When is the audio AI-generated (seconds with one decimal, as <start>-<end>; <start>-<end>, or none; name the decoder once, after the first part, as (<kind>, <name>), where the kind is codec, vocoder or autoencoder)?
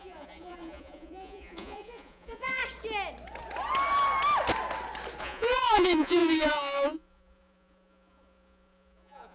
0.0-2.6 (vocoder, Vocos); 5.2-9.3